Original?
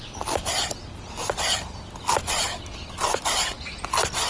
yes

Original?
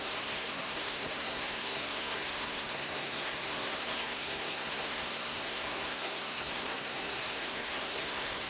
no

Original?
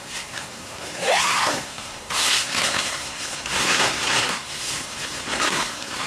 no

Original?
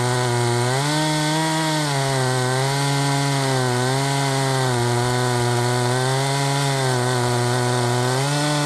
yes